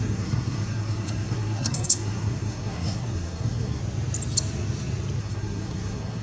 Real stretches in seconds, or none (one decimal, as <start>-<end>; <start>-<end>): 3.8-5.2